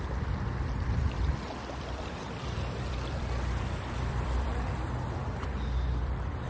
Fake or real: fake